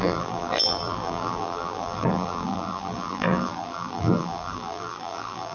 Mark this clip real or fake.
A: fake